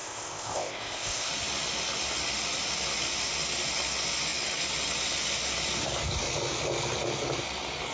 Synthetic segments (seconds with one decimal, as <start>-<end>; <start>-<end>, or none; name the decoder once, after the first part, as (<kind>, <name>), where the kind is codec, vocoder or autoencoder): 0.0-1.3 (codec, ZipCodec)